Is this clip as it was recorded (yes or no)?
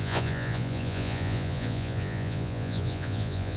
no